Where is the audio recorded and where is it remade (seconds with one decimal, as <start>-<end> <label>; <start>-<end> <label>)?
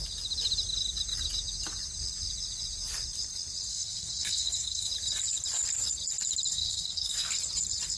0.0-3.7 recorded; 3.7-4.9 remade; 4.9-6.5 recorded; 6.5-7.3 remade; 7.3-8.0 recorded